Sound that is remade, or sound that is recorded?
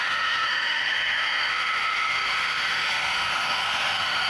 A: remade